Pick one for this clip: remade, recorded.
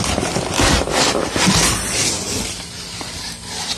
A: recorded